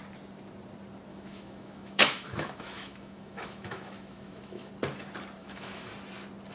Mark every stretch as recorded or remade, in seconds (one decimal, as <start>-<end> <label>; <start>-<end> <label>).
0.0-1.1 recorded; 1.1-4.7 remade; 4.7-5.4 recorded; 5.4-5.9 remade; 5.9-6.5 recorded